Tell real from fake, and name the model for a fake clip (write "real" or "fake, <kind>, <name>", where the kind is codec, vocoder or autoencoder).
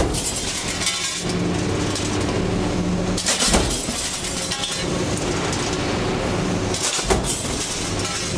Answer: real